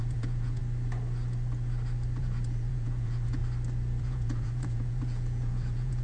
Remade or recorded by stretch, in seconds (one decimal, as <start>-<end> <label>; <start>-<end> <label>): 0.0-0.6 remade; 0.6-2.2 recorded; 2.2-3.4 remade; 3.4-4.0 recorded; 4.0-6.0 remade

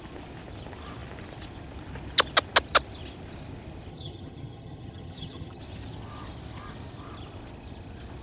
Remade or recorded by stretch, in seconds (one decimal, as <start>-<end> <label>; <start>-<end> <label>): 0.0-3.9 recorded; 3.9-5.6 remade; 5.6-8.2 recorded

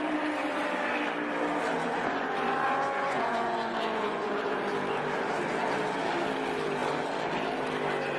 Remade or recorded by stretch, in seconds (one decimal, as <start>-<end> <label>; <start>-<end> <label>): 0.0-1.8 recorded; 1.8-4.3 remade; 4.3-8.2 recorded

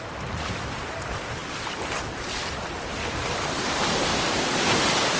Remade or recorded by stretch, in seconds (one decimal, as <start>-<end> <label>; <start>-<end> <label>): 0.0-5.2 recorded

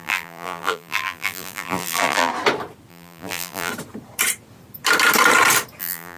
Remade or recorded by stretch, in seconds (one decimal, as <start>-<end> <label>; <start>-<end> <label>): 0.0-2.3 remade; 2.3-2.9 recorded; 2.9-3.7 remade; 3.7-5.8 recorded; 5.8-6.2 remade

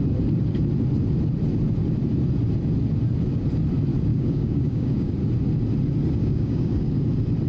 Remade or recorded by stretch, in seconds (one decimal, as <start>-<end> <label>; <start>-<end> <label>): 0.0-4.1 recorded; 4.1-5.1 remade; 5.1-6.2 recorded; 6.2-7.1 remade; 7.1-7.5 recorded